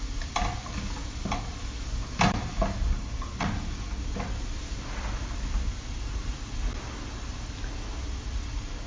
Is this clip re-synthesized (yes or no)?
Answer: no